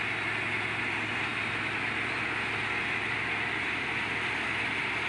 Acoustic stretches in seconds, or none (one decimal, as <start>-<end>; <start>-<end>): 0.0-5.1